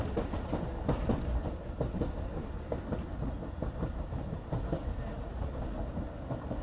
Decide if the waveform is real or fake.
real